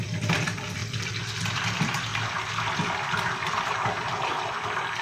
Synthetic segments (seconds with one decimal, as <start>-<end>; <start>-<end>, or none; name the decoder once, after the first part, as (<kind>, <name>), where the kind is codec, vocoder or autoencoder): 0.0-0.8 (vocoder, BigVGAN v2); 1.5-2.1; 3.9-5.0